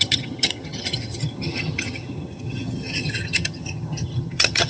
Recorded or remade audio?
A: remade